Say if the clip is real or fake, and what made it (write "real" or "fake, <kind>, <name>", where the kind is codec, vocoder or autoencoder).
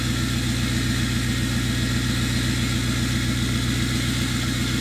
real